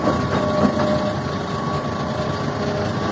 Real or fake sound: real